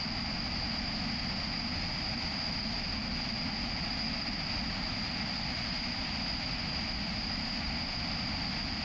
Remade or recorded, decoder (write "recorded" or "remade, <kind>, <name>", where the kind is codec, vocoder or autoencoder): recorded